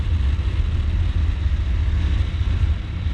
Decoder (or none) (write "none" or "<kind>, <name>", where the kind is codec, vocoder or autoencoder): none